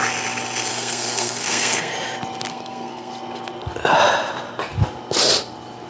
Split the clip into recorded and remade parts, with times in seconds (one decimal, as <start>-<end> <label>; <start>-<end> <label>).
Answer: 0.0-0.7 recorded; 0.7-1.9 remade; 1.9-2.5 recorded; 2.5-3.1 remade; 3.1-5.9 recorded